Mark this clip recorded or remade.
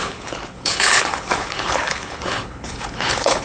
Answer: remade